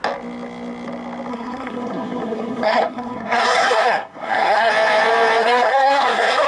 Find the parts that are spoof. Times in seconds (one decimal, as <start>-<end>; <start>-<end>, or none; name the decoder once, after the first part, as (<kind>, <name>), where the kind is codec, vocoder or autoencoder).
1.3-4.7 (codec, SNAC); 5.4-6.5